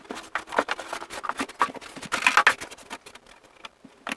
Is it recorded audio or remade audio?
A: recorded